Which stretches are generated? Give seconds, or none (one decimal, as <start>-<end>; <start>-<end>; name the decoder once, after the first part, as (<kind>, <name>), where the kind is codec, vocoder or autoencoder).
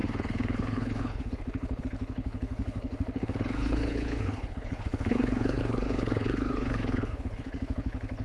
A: 0.0-8.2 (codec, HILCodec)